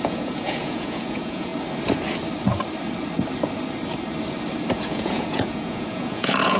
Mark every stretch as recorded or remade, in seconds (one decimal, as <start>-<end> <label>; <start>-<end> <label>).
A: 0.0-1.5 remade; 1.5-4.8 recorded; 4.8-6.6 remade